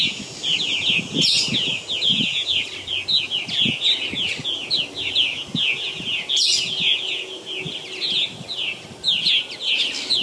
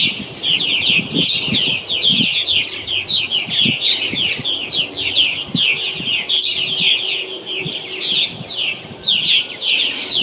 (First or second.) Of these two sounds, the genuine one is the first